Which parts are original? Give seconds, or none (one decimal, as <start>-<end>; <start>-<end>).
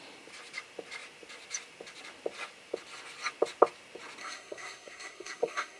0.0-4.2